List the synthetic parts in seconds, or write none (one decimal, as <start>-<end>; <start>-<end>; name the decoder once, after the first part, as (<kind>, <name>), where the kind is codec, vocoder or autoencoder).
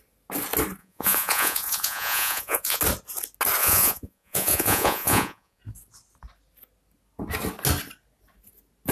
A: 0.8-2.8 (vocoder, Vocos); 3.6-5.6